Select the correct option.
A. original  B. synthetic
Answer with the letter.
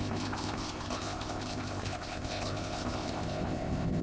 B